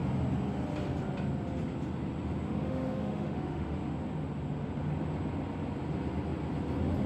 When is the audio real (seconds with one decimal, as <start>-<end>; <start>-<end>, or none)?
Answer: 0.0-2.4; 3.9-7.1